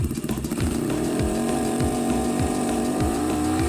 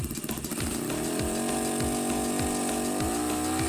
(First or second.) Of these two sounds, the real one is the second